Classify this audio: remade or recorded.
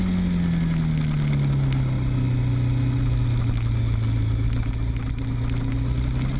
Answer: recorded